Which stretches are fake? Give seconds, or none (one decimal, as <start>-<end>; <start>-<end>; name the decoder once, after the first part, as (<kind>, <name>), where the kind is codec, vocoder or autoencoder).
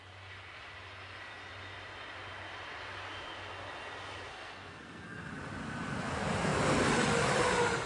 4.3-5.3 (codec, SNAC)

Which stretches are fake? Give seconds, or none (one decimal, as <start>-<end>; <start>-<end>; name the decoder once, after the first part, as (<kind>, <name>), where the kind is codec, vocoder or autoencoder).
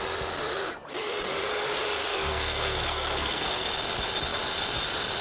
2.1-3.7 (codec, SNAC)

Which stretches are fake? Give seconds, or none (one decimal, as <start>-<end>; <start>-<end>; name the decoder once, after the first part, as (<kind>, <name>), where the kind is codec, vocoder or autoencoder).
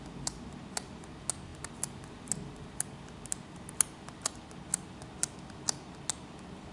none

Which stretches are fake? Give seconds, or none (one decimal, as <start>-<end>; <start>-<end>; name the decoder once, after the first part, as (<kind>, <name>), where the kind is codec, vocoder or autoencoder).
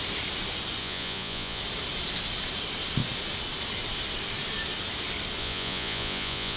0.8-1.6 (vocoder, Vocos); 5.4-6.6